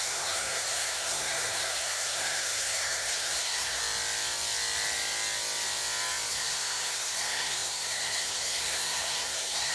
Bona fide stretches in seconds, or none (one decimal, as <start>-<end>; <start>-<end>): 3.8-6.3